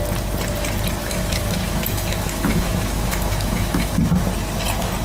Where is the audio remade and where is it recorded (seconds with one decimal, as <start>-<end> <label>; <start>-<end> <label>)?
0.0-1.0 recorded; 1.0-4.0 remade; 4.0-5.0 recorded